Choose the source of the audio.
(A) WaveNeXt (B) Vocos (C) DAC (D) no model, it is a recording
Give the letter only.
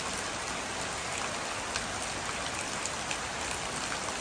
D